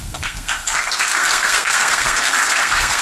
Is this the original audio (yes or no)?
no